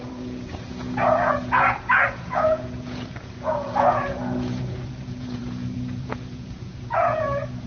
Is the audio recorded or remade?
remade